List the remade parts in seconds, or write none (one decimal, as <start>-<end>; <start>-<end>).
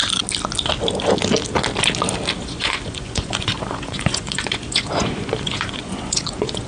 2.4-6.7